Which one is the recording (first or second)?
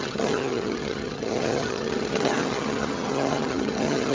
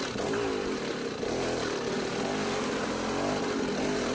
second